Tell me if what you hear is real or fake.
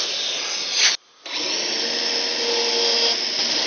real